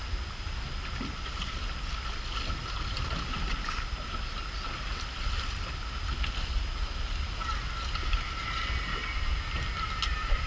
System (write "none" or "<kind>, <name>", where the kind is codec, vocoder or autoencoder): none